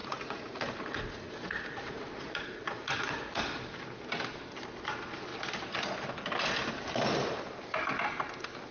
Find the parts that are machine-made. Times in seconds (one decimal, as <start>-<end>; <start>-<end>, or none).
0.0-3.4